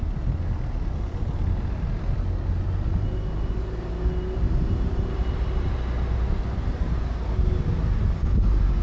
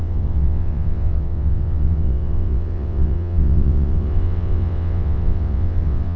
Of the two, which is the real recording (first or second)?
first